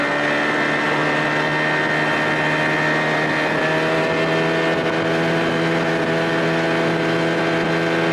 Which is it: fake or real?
real